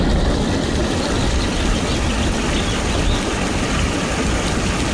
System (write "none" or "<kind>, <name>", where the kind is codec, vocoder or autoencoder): none